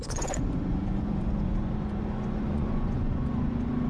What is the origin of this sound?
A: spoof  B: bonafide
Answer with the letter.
A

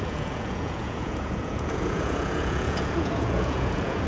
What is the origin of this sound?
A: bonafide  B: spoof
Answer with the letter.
B